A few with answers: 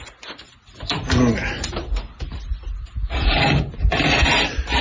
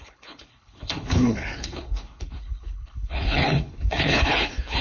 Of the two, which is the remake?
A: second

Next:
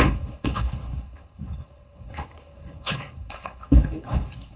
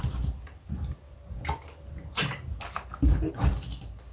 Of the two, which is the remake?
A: first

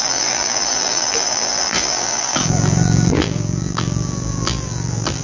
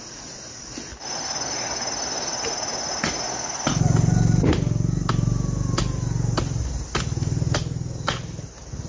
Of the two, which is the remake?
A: first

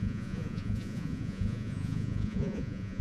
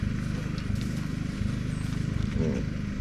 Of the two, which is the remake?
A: first